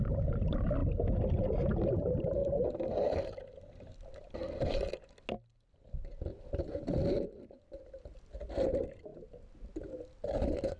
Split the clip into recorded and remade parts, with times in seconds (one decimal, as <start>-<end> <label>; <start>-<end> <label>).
0.0-6.3 recorded; 6.3-7.1 remade; 7.1-10.8 recorded